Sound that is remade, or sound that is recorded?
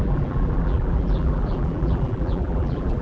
remade